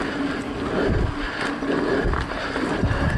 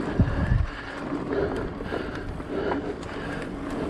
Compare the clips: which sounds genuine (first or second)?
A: first